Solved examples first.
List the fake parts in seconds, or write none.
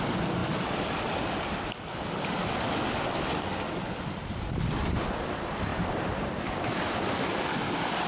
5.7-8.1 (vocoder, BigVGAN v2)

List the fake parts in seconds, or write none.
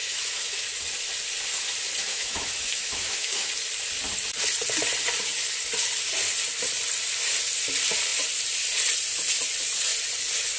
0.0-0.6 (autoencoder, DAC-VAE); 2.1-3.5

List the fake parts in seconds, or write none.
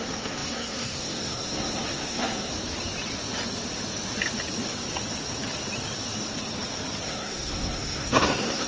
0.0-2.5 (codec, SNAC); 7.0-8.7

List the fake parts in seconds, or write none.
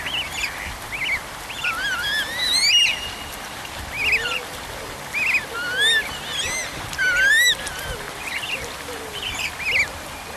none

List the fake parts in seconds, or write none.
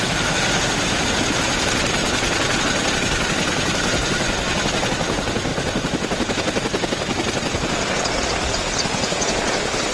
2.0-2.6 (vocoder, BigVGAN v2)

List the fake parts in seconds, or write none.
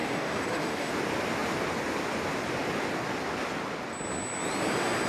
0.0-0.9 (codec, DAC)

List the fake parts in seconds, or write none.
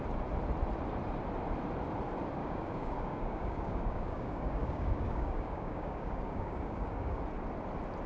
2.4-7.2 (codec, DAC)